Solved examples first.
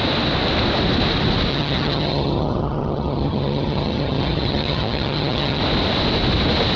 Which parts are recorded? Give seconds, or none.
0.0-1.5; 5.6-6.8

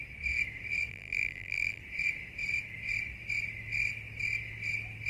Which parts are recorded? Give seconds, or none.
0.0-0.9; 1.8-5.1

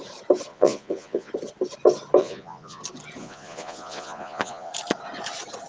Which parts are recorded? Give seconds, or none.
0.0-0.5; 1.3-2.2; 2.8-3.2; 4.7-5.7

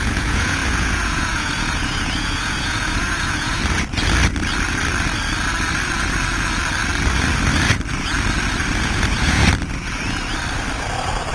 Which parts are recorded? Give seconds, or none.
3.6-8.8; 9.4-11.3

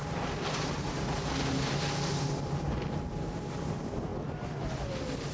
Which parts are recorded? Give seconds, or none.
0.0-5.3

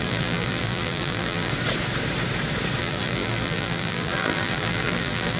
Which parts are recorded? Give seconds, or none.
1.5-2.8